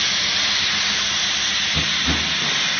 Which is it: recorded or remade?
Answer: recorded